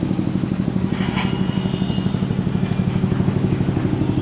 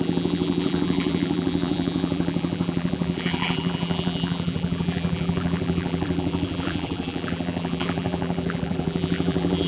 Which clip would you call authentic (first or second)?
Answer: first